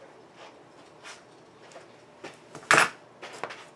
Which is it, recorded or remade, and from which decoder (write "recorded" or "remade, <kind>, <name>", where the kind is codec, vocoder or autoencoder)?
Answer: recorded